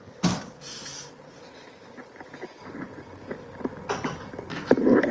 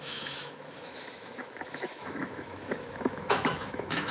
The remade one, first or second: second